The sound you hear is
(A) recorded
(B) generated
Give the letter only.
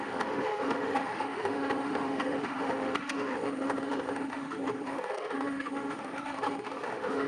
B